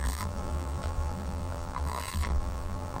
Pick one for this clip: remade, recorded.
remade